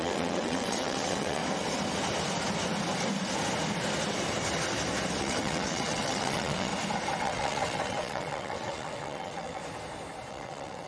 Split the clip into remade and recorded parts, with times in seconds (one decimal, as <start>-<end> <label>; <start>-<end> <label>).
0.0-1.4 remade; 1.4-5.2 recorded; 5.2-6.7 remade; 6.7-7.2 recorded; 7.2-9.6 remade; 9.6-10.3 recorded; 10.3-10.9 remade